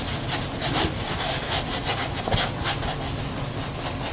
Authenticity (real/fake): real